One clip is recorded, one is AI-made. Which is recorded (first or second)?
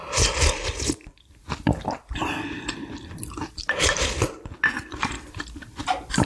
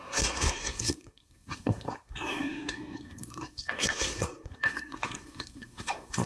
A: first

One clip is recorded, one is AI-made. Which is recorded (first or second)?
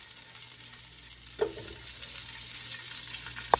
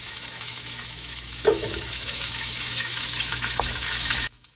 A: first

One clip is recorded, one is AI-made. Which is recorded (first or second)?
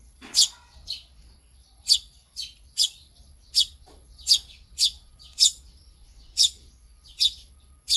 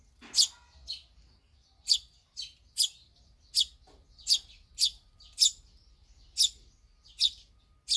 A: second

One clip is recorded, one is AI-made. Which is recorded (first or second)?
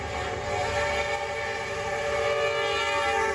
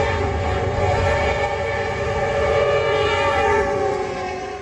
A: first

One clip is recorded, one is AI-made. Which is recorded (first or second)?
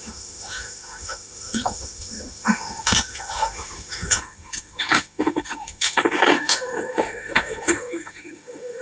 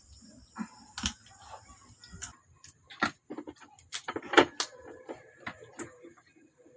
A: second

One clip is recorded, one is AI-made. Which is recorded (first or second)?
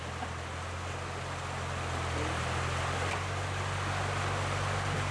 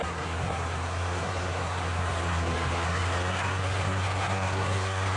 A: first